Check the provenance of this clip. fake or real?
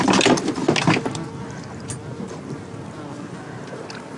real